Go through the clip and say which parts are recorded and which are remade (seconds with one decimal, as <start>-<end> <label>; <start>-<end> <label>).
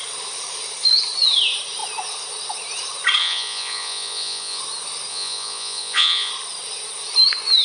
0.0-3.2 recorded; 3.2-4.6 remade; 4.6-5.1 recorded; 5.1-6.3 remade; 6.3-7.6 recorded